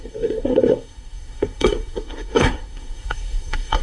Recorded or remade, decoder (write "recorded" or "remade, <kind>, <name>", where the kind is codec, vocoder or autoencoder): remade, codec, SNAC